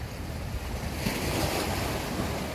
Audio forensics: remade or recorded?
recorded